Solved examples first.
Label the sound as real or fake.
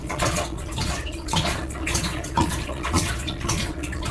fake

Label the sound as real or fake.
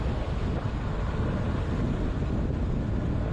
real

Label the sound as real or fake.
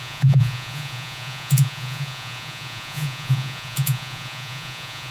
fake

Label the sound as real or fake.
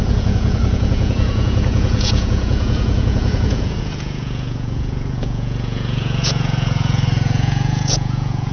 fake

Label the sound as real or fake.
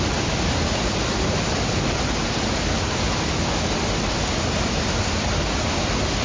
real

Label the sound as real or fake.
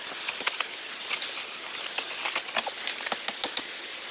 real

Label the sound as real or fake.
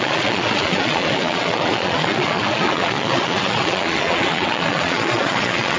fake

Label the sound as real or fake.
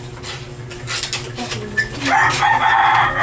real